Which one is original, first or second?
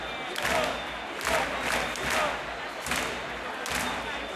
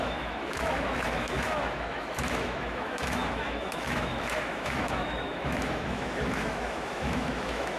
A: first